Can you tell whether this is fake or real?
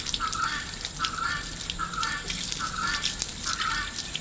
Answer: real